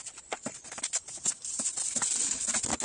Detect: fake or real real